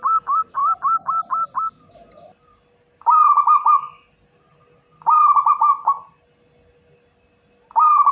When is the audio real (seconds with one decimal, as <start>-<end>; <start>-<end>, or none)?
0.0-8.1